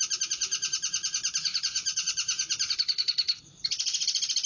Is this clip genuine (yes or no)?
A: yes